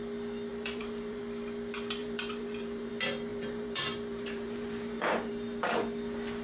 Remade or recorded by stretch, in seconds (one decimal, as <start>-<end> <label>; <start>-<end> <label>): 0.0-0.5 recorded; 0.5-1.2 remade; 1.2-2.0 recorded; 2.0-2.9 remade; 2.9-3.3 recorded; 3.3-5.3 remade; 5.3-6.4 recorded